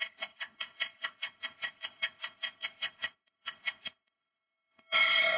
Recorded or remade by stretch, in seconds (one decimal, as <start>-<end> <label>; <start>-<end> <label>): 0.0-5.4 remade